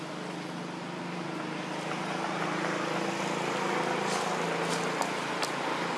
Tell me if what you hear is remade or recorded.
recorded